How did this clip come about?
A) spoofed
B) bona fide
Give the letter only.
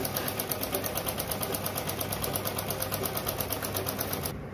B